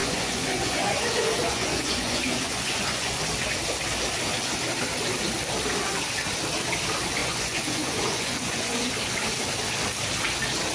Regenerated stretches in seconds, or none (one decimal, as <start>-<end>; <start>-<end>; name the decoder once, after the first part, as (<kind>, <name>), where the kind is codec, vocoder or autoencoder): 0.0-3.2 (vocoder, Vocos); 7.2-8.9